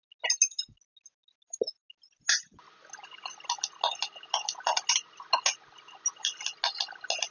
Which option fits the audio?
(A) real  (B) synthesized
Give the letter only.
A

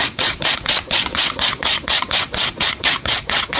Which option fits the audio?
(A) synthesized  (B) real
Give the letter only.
A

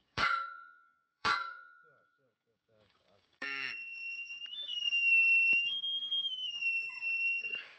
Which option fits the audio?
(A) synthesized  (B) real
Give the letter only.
A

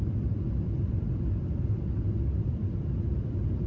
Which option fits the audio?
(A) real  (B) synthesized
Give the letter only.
B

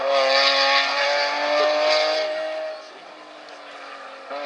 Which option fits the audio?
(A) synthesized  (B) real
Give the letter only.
B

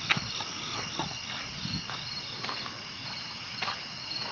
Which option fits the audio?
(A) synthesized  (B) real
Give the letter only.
B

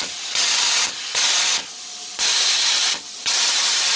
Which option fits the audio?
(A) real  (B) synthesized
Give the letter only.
A